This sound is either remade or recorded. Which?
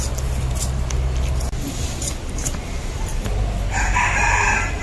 recorded